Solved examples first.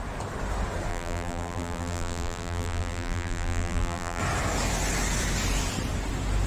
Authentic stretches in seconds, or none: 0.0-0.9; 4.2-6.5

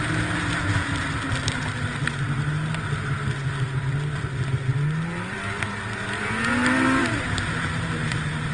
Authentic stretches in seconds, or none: 0.0-6.6

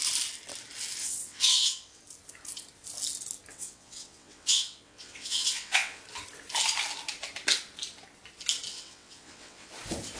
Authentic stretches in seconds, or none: 0.0-1.0; 2.0-3.5; 6.0-8.7; 9.7-10.2

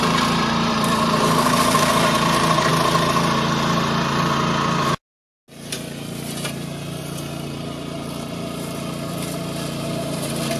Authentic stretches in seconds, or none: 2.7-7.0

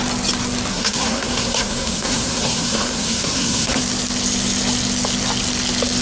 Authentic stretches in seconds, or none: 0.0-0.7; 3.8-6.0

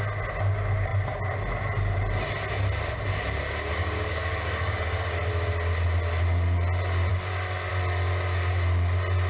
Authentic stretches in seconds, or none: 0.0-3.7; 5.3-7.1; 7.7-9.3

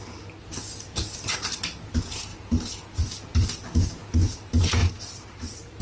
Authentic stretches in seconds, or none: 0.0-4.8